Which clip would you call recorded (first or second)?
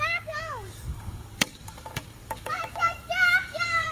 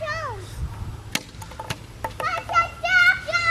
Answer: second